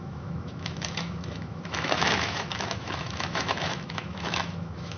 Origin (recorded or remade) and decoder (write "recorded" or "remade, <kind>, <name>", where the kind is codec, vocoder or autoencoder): remade, autoencoder, DAC-VAE